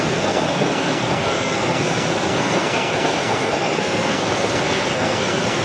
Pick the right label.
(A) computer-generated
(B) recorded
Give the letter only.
A